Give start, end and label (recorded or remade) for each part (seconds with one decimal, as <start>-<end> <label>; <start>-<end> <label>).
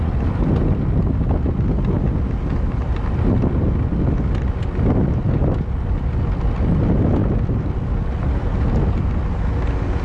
0.0-7.2 recorded; 7.2-8.4 remade; 8.4-10.0 recorded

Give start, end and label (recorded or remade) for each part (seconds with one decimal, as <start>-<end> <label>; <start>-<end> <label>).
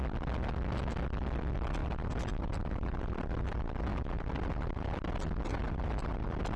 0.0-6.6 recorded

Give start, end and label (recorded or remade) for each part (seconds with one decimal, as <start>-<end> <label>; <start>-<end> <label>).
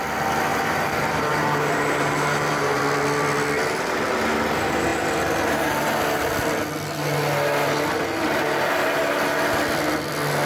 0.0-0.5 recorded; 0.5-2.8 remade; 2.8-10.5 recorded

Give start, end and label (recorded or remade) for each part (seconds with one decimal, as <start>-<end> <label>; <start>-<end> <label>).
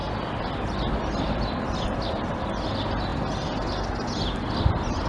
0.0-5.1 recorded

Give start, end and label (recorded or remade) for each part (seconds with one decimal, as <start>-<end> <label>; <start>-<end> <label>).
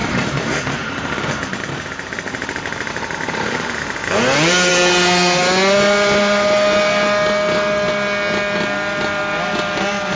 0.0-4.0 remade; 4.0-10.2 recorded